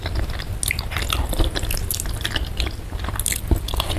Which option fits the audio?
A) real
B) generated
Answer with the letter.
A